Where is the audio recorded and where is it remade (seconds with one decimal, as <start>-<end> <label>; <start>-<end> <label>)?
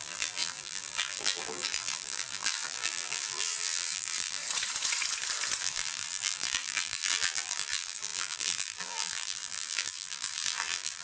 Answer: 0.0-4.4 remade; 4.4-5.6 recorded; 5.6-11.0 remade